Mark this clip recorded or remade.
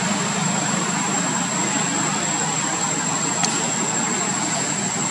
recorded